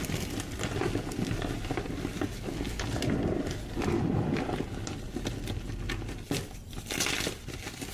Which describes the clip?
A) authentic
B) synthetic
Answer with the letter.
A